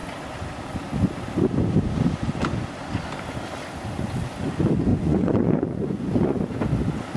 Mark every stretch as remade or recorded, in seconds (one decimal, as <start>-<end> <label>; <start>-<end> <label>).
0.0-4.9 recorded; 4.9-6.4 remade; 6.4-7.2 recorded